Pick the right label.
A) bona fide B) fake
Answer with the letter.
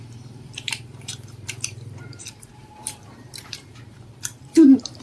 B